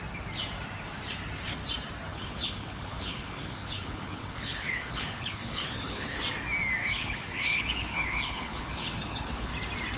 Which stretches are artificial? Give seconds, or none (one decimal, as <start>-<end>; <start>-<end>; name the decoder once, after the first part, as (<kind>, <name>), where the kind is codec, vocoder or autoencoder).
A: 2.1-6.2 (codec, HILCodec); 6.8-9.5